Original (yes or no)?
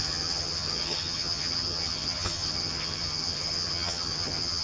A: no